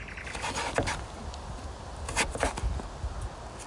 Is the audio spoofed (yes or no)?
no